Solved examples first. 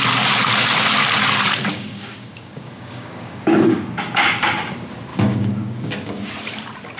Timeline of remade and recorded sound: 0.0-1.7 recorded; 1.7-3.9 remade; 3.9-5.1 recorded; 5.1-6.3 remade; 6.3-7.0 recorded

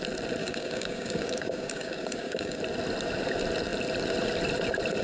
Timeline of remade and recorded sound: 0.0-0.4 recorded; 0.4-2.6 remade; 2.6-5.0 recorded

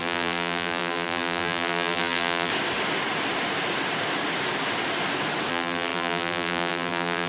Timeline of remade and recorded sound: 0.0-2.5 remade; 2.5-5.5 recorded; 5.5-7.3 remade

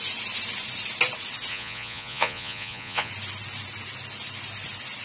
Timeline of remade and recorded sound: 0.0-1.5 recorded; 1.5-3.1 remade; 3.1-5.0 recorded

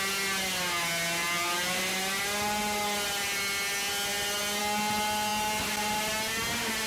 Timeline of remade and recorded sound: 0.0-1.2 recorded; 1.2-1.8 remade; 1.8-6.9 recorded

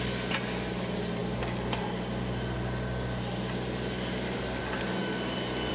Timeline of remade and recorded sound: 0.0-5.7 recorded